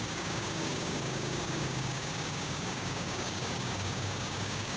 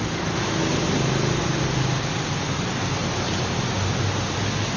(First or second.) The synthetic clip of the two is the first